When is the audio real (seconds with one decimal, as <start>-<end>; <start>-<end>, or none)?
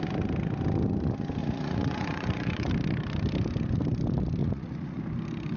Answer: 0.0-1.4; 2.7-4.4; 5.0-5.6